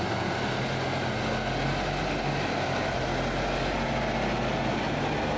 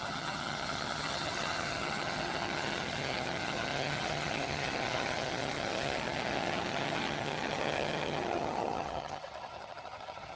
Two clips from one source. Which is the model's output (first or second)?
second